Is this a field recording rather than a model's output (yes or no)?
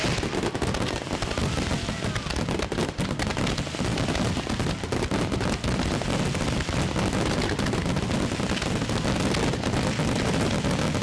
yes